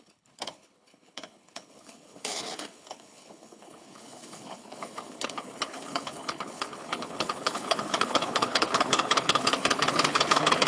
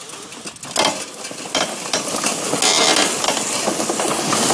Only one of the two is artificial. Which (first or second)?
first